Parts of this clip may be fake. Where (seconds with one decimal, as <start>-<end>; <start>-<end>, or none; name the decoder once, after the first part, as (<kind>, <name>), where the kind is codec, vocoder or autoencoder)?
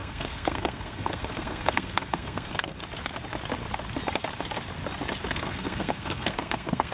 0.0-2.8 (codec, SNAC); 5.3-6.9